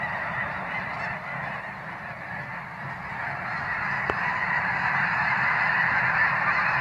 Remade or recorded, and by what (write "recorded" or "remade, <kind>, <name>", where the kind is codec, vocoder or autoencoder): recorded